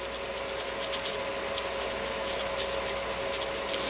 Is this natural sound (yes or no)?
yes